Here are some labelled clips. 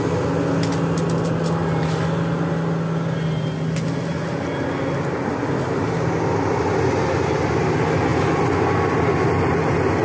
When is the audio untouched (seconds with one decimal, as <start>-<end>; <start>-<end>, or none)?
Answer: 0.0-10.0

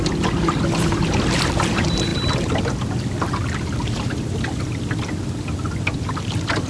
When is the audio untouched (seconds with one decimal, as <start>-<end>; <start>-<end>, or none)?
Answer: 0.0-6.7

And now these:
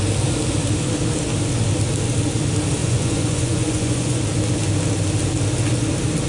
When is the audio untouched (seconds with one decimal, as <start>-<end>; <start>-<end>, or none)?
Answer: 0.0-2.8; 4.2-6.3